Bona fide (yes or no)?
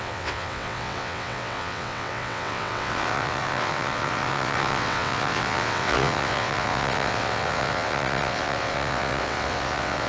no